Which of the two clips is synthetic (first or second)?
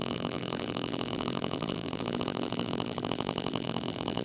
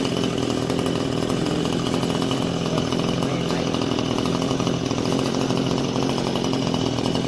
first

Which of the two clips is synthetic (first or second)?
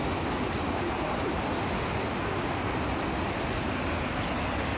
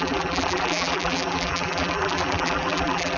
second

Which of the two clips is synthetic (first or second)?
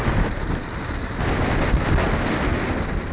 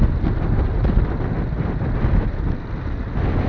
first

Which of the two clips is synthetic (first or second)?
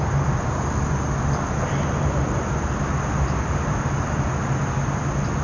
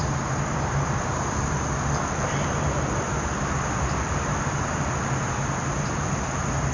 second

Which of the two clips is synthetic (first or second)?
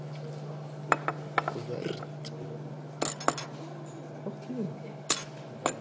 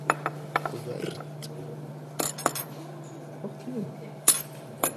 second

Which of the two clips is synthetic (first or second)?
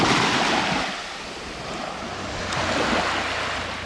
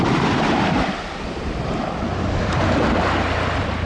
second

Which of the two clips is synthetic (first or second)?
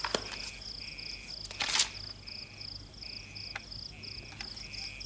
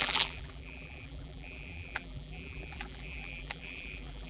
second